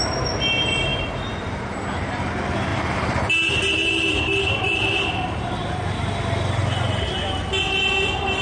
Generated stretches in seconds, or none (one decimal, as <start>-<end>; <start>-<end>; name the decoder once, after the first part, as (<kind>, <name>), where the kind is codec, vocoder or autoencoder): 0.9-2.3 (vocoder, BigVGAN v2); 2.7-5.6